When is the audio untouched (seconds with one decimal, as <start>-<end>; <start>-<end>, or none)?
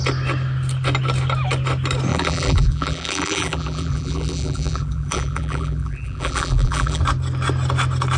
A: 0.0-2.1; 7.0-8.2